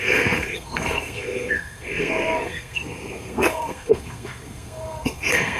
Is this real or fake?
fake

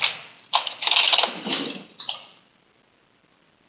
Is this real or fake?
real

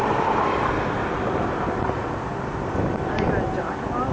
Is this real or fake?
real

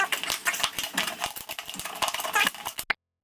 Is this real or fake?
real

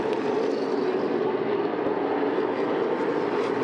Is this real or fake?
real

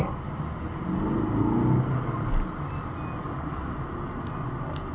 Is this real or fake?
real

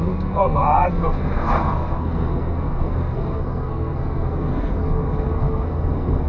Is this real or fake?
fake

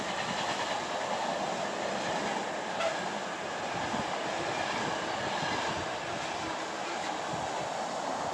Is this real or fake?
real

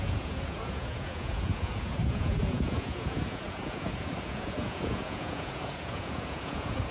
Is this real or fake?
fake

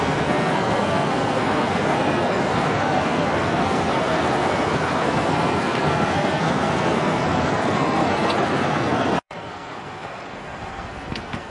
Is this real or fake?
fake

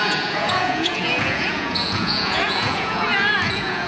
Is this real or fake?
fake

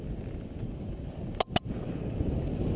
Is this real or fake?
real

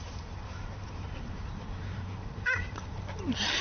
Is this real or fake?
fake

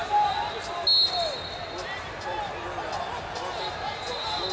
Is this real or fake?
real